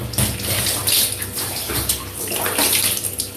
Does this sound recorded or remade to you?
recorded